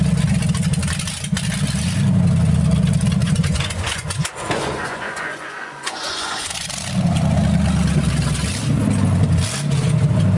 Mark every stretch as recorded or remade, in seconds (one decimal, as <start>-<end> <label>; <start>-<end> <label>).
0.0-3.2 recorded; 3.2-6.7 remade; 6.7-10.4 recorded